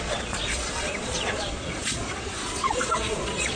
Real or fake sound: fake